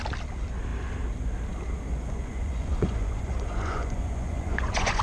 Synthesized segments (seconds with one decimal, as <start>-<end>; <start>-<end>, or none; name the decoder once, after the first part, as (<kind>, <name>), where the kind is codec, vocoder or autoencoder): 1.9-5.0 (vocoder, Vocos)